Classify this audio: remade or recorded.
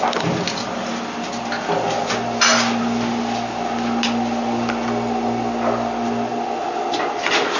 recorded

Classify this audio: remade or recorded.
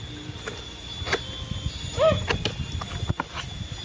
recorded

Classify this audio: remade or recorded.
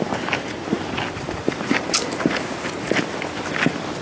recorded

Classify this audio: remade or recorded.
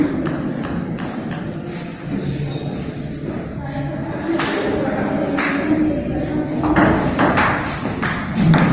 recorded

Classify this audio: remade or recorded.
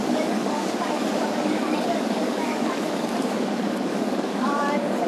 remade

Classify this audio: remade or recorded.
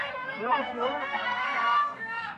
remade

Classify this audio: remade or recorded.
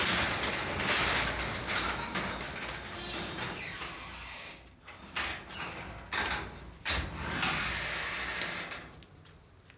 recorded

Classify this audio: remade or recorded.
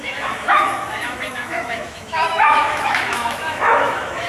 remade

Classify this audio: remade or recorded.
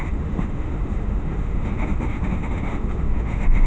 remade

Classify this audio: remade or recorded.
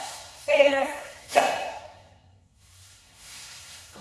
remade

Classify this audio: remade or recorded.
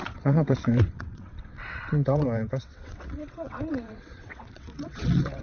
remade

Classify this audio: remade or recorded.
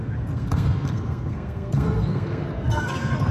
remade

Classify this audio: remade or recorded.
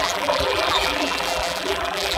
remade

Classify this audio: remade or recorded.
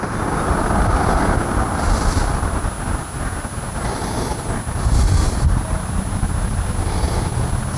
recorded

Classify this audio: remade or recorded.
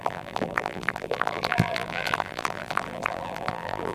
remade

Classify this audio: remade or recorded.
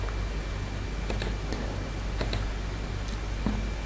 recorded